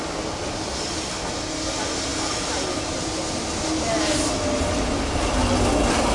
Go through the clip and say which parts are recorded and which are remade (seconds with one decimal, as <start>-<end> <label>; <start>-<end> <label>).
0.0-6.1 recorded